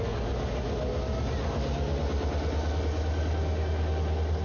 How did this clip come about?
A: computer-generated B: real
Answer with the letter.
B